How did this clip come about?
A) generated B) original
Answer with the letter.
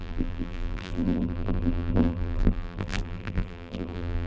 A